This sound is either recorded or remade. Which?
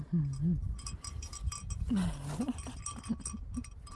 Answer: recorded